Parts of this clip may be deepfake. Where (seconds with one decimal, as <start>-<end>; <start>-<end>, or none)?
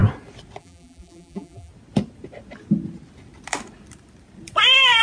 0.6-1.7